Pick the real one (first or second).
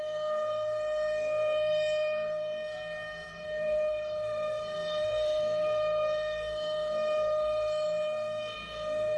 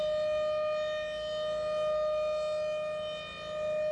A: second